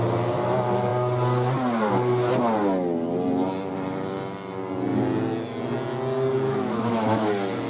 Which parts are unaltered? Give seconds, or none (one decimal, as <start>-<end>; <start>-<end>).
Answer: 0.0-6.5; 7.3-7.7